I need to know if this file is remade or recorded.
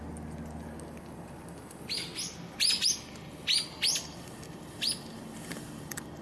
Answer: recorded